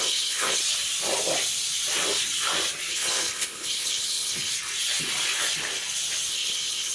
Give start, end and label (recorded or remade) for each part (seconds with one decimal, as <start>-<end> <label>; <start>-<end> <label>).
0.0-0.6 remade; 0.6-2.9 recorded; 2.9-4.5 remade; 4.5-6.3 recorded; 6.3-6.9 remade